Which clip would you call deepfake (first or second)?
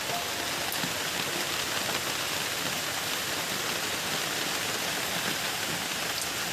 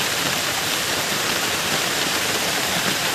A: second